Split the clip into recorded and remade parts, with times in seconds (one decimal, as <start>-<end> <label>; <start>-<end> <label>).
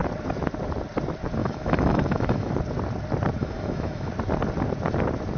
0.0-1.4 recorded; 1.4-2.5 remade; 2.5-3.4 recorded; 3.4-4.1 remade; 4.1-5.4 recorded